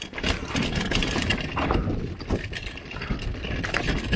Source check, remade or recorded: recorded